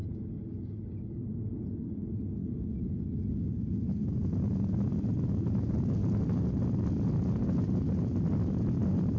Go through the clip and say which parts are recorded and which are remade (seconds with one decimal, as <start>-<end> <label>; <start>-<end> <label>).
0.0-9.2 recorded